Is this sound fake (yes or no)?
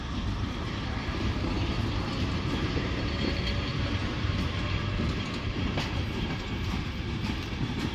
yes